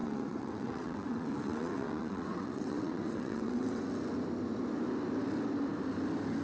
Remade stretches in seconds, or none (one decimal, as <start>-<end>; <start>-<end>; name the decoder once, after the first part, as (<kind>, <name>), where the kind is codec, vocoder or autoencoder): 0.0-3.8 (vocoder, WaveNeXt)